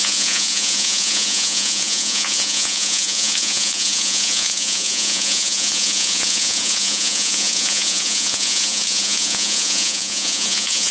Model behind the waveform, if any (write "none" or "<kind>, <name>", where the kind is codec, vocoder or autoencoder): vocoder, Vocos